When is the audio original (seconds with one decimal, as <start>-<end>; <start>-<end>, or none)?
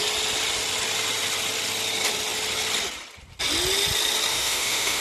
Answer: 0.0-4.3